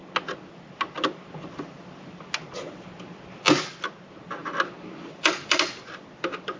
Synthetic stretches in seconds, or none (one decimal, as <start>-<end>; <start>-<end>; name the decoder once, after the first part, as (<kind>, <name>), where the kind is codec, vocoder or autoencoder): 4.4-6.6 (vocoder, BigVGAN v2)

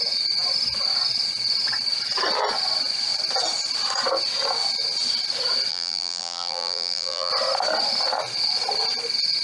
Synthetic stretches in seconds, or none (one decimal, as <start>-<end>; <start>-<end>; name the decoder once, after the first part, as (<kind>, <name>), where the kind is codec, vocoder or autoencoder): 5.7-7.3 (vocoder, BigVGAN v2)

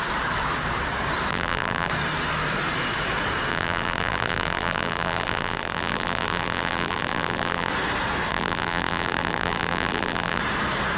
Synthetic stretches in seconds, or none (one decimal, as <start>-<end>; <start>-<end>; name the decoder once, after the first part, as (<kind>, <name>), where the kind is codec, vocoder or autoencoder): 1.3-1.9 (vocoder, BigVGAN v2); 3.5-7.7; 8.3-10.4